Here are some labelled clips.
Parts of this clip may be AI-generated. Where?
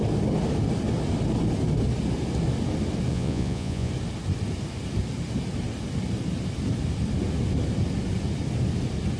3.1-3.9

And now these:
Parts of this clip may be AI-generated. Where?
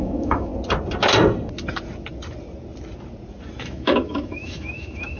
0.0-0.5; 3.6-5.2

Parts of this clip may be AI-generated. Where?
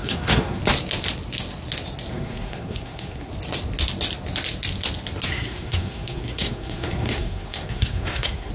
0.0-0.6; 2.1-3.3; 5.3-8.5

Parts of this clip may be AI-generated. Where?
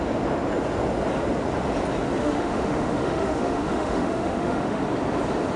2.2-4.8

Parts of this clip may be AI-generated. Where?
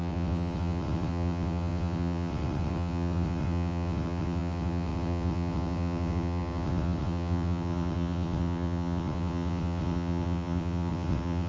0.0-11.5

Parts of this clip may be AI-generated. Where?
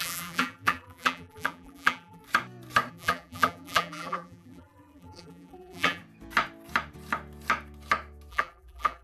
0.0-2.2; 2.9-6.0; 8.3-9.0